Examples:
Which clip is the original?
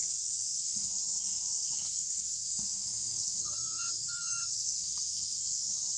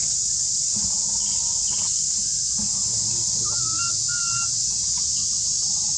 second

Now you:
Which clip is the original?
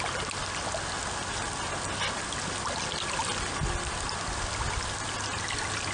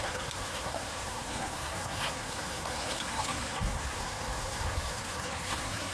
first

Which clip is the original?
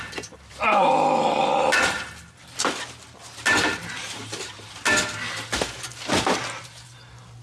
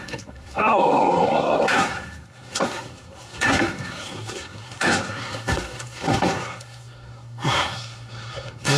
first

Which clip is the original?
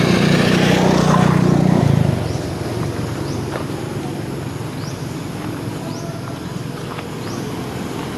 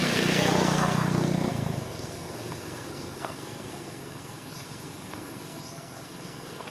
first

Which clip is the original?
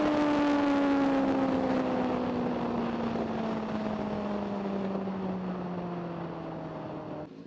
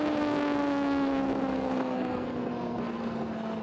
first